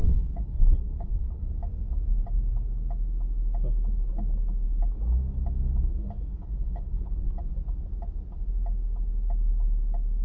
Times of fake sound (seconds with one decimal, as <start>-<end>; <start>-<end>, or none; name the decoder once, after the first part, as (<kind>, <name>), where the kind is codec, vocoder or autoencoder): 0.0-1.5 (codec, HILCodec); 6.3-7.1